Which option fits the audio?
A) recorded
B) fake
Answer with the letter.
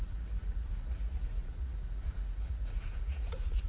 B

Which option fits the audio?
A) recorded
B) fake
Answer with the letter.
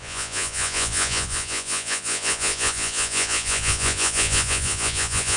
B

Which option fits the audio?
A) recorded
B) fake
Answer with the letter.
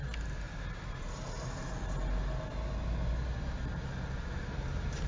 A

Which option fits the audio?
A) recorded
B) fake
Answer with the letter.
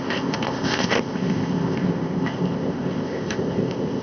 B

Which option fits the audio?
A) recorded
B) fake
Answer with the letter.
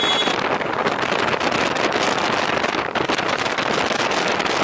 A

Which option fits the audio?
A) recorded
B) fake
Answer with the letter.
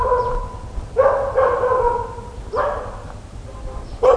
A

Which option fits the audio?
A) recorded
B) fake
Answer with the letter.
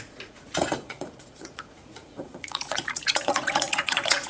B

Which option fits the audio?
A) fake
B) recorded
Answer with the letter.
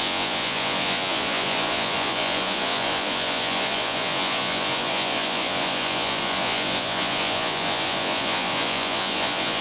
A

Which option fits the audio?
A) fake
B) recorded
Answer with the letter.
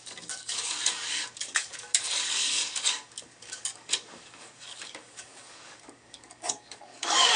A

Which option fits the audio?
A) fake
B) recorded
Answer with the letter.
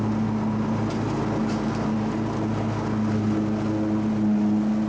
B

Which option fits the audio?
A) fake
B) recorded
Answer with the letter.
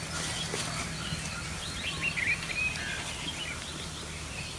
B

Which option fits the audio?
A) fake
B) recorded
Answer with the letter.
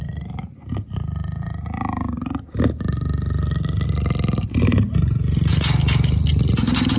B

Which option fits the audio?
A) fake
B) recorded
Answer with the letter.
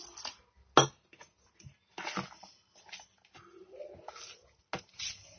B